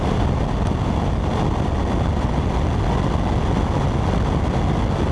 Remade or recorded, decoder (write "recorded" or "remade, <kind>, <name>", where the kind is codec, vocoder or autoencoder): recorded